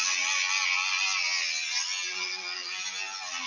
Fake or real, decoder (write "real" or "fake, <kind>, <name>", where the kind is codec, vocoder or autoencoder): real